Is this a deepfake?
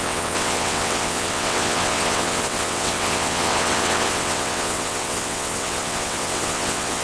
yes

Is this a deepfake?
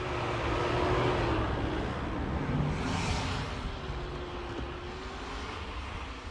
no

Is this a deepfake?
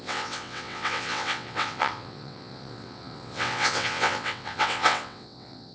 yes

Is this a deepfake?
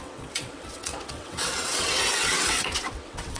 yes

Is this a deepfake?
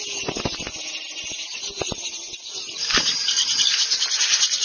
no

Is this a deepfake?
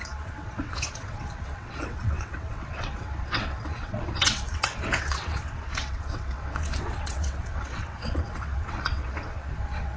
yes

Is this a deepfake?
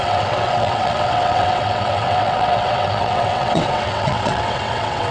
yes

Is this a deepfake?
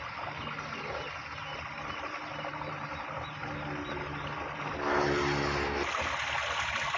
no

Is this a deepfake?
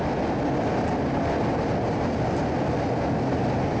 no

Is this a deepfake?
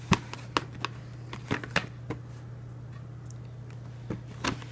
no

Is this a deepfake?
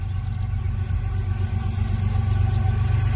no